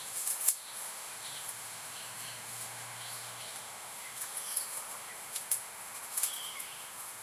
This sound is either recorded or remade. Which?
remade